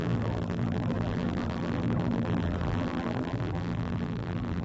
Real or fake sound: fake